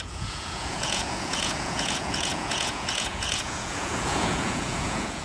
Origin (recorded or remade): remade